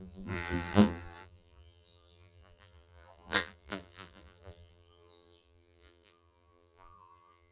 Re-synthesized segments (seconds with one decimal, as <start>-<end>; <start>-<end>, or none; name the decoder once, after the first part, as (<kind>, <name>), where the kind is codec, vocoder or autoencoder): 0.0-7.5 (vocoder, BigVGAN v2)